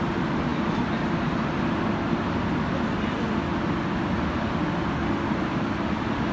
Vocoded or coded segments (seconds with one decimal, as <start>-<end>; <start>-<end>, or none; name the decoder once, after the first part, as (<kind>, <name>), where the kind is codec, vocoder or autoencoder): none